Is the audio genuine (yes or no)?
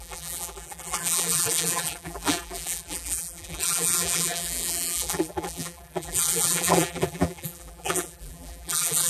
no